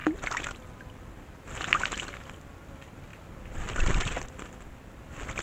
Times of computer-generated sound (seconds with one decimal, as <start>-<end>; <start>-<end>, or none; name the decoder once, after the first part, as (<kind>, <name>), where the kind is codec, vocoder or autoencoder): none